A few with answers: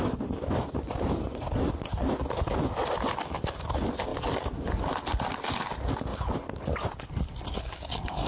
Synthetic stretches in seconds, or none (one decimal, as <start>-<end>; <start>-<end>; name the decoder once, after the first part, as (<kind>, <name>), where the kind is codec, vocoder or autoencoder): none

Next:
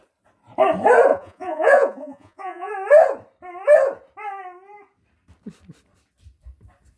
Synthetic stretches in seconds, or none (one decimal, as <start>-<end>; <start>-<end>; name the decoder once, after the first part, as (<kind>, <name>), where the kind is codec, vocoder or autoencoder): 1.1-2.7 (vocoder, Vocos)

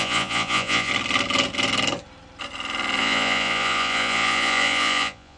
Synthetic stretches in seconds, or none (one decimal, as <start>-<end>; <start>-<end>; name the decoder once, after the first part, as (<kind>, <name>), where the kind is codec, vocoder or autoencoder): 0.0-0.9 (vocoder, Vocos); 3.0-5.4

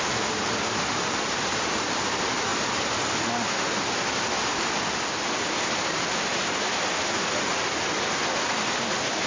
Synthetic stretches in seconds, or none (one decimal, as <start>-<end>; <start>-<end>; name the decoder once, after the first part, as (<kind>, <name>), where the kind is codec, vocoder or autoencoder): none